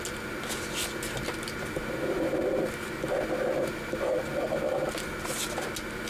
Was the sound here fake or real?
real